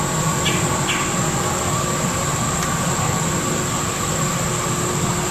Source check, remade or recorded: recorded